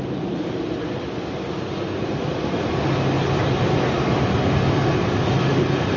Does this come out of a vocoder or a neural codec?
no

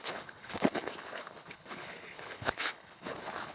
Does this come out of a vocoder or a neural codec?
yes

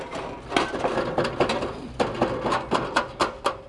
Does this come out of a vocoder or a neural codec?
no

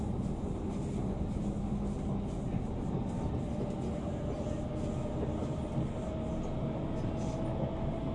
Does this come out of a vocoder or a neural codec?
no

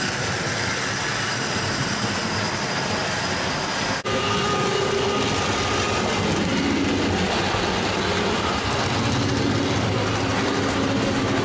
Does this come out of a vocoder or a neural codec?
no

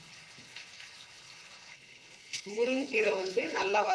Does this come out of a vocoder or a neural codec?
yes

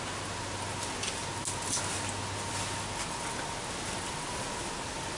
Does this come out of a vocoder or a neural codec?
no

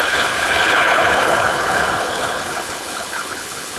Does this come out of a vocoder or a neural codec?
yes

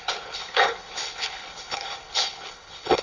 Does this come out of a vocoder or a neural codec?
yes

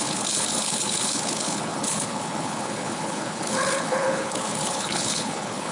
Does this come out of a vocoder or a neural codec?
yes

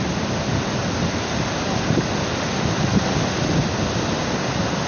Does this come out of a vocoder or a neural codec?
no